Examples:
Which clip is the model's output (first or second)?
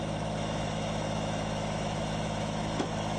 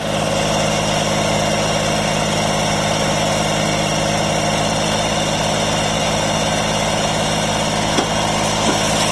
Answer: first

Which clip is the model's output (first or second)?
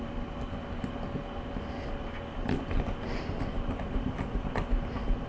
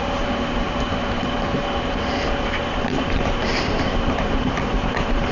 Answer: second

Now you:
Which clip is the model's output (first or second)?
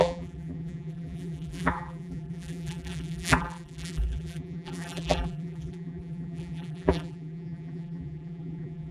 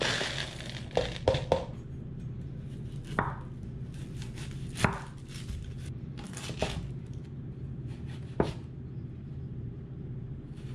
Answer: first